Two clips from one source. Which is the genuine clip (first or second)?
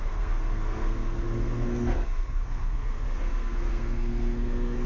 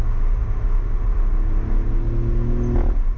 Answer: second